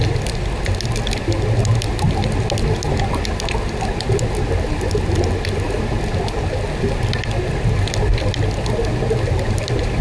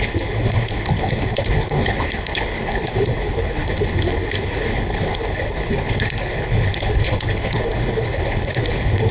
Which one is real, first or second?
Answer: first